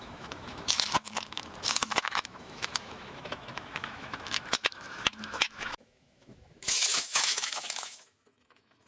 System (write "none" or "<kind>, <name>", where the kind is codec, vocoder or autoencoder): autoencoder, DAC-VAE